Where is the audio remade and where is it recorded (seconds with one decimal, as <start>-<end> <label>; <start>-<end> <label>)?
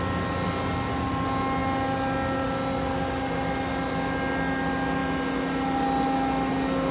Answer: 0.0-6.9 recorded